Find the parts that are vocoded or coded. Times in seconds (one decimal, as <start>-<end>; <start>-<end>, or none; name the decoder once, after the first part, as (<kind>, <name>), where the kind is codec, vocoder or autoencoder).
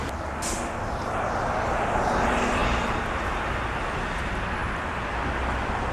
none